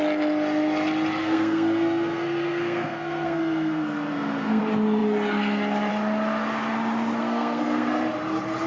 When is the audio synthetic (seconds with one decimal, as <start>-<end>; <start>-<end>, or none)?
1.2-4.6; 7.2-7.9